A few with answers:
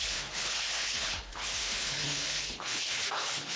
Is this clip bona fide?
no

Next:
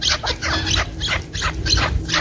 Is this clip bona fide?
yes